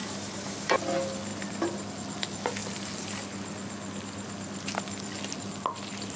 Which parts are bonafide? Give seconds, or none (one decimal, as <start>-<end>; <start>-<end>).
0.8-6.2